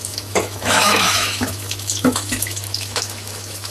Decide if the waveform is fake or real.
fake